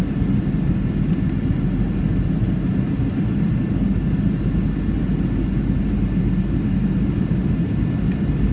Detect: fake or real real